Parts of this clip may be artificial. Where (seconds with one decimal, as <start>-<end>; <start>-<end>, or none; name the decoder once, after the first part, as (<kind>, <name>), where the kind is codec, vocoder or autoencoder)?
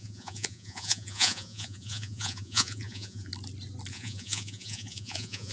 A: 0.0-3.3 (vocoder, Vocos); 3.9-5.5